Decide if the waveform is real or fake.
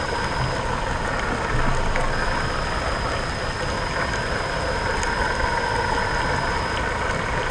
real